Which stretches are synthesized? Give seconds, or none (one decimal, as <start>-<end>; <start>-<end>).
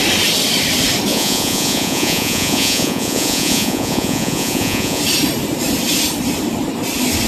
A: 1.1-5.0